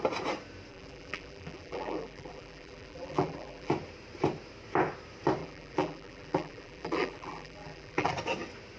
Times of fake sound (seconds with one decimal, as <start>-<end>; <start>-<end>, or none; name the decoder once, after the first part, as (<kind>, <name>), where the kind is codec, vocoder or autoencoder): 0.7-3.7 (vocoder, BigVGAN v2); 5.4-8.1